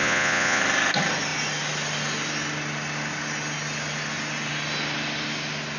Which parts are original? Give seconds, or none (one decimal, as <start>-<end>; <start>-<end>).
0.6-5.8